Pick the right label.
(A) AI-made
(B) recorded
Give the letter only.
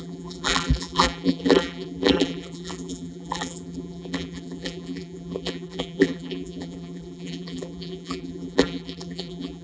A